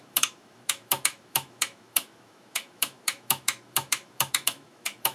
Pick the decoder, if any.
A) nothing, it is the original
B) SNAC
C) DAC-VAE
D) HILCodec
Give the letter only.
C